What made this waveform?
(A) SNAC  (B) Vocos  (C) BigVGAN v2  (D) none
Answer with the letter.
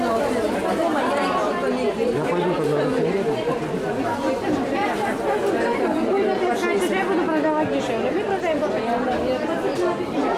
D